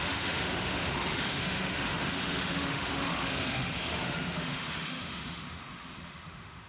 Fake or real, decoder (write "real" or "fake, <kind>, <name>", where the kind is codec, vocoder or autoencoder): fake, autoencoder, DAC-VAE